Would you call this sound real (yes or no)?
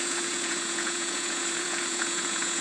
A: no